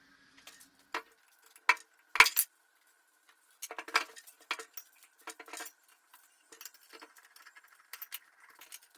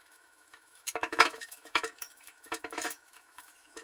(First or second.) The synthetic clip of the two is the second